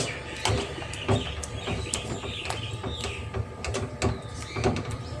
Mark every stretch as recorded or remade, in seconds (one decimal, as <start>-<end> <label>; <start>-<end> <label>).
0.0-5.2 recorded